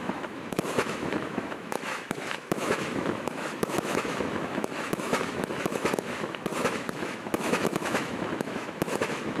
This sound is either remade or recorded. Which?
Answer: remade